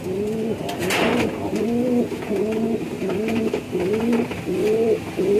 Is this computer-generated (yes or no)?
no